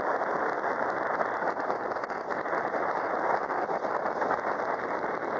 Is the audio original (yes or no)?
yes